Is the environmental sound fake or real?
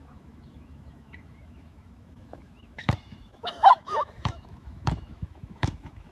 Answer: fake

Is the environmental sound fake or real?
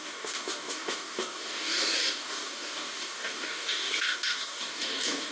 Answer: fake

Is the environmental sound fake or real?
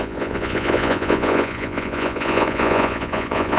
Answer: fake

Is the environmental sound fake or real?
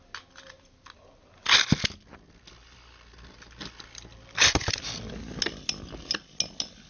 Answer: real